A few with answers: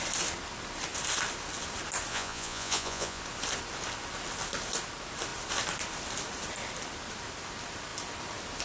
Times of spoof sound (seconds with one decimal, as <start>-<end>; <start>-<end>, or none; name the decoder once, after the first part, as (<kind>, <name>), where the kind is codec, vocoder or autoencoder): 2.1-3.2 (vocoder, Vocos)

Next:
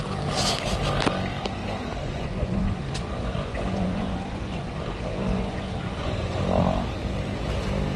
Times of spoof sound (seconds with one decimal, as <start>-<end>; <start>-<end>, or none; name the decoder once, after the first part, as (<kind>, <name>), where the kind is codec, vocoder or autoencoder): 1.6-6.4 (vocoder, Vocos)

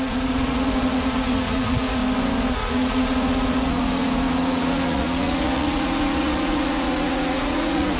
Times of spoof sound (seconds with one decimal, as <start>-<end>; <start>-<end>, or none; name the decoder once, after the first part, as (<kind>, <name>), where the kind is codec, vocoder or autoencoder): 0.0-2.0 (vocoder, Vocos); 2.5-8.0

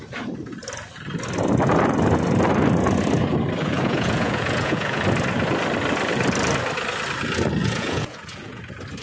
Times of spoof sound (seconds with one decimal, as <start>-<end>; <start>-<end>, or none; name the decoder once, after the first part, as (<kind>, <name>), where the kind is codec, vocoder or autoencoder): 3.6-5.0 (vocoder, Vocos); 7.6-8.6